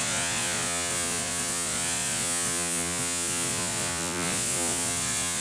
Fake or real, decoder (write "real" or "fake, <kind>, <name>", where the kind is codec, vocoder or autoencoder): fake, vocoder, Vocos